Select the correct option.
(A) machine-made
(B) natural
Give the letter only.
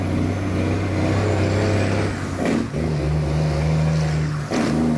B